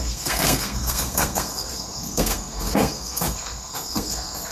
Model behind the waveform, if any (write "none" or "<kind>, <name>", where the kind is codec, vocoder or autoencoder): codec, SNAC